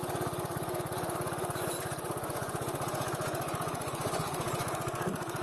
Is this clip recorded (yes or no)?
no